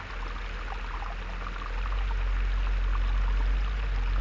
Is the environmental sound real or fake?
real